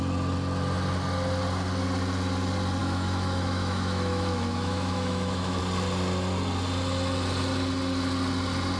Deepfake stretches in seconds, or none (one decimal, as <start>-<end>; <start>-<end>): 2.8-5.6